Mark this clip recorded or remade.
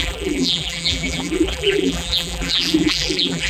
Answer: remade